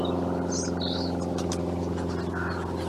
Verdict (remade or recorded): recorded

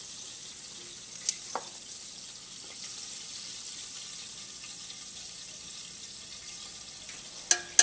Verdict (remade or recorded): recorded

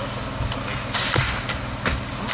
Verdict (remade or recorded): recorded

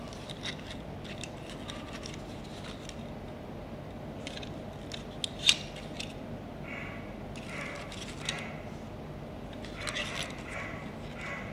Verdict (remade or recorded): recorded